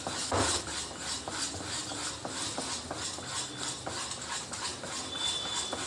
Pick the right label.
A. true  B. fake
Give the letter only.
A